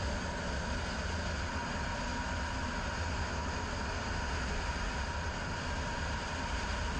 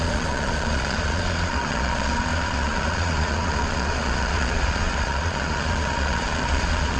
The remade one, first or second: second